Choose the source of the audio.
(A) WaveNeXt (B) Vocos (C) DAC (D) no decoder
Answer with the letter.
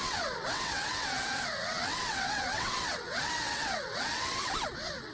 A